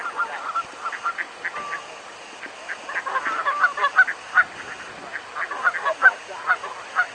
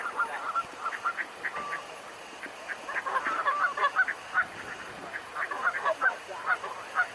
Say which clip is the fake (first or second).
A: second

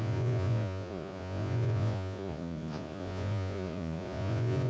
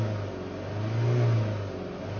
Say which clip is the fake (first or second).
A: first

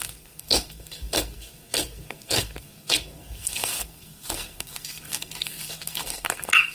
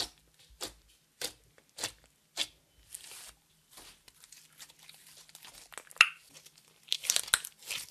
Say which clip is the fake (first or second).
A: first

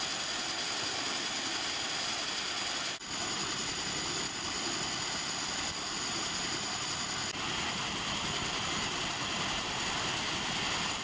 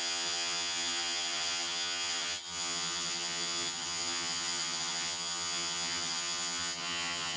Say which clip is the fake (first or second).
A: second